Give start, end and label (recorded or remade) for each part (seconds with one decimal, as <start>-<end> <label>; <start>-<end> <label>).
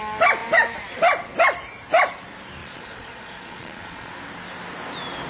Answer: 0.0-2.6 recorded; 2.6-4.1 remade; 4.1-5.3 recorded